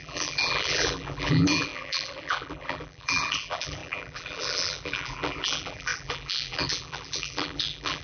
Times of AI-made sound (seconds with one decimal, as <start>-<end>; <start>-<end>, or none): 0.0-8.0